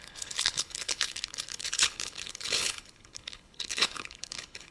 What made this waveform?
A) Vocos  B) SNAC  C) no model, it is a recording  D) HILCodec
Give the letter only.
D